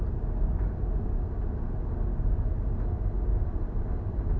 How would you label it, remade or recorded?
recorded